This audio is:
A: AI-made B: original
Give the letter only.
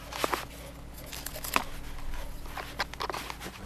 B